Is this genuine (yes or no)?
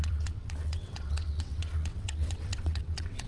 no